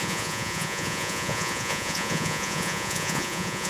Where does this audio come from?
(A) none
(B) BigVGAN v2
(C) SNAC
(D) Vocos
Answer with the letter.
D